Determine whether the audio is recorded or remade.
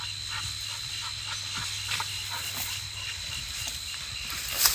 recorded